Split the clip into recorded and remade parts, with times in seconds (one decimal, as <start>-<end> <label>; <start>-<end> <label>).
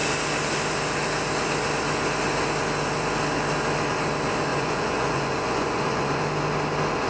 0.0-4.5 recorded; 4.5-6.2 remade; 6.2-7.1 recorded